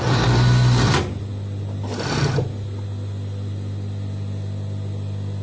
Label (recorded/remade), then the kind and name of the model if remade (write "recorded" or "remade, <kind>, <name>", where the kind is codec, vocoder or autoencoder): recorded